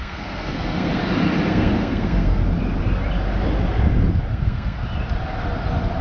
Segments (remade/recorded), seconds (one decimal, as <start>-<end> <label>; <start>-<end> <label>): 0.0-1.0 remade; 1.0-1.5 recorded; 1.5-2.4 remade; 2.4-4.3 recorded; 4.3-4.8 remade; 4.8-6.0 recorded